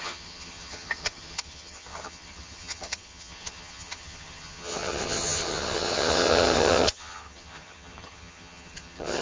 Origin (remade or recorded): remade